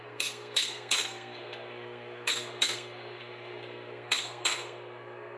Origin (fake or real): fake